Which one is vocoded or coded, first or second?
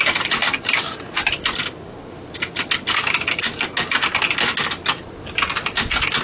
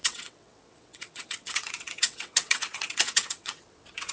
second